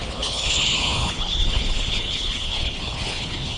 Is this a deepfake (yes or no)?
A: yes